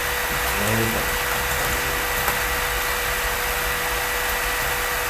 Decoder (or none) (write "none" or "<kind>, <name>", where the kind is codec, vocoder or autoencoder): none